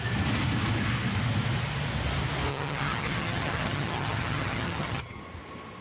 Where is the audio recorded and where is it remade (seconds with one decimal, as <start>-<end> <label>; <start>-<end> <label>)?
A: 0.0-2.5 recorded; 2.5-5.2 remade; 5.2-5.8 recorded